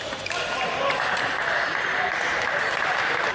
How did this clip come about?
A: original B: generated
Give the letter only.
B